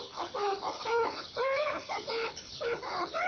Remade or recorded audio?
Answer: remade